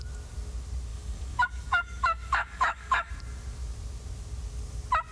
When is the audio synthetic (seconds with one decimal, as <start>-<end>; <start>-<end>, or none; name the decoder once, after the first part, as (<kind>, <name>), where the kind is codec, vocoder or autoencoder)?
0.9-3.1 (codec, DAC)